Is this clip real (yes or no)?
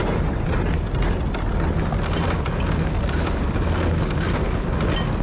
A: yes